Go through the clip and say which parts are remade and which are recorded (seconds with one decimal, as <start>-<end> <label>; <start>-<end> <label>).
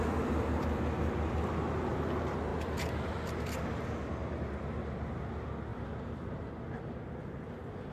0.0-5.7 recorded; 5.7-6.4 remade; 6.4-7.9 recorded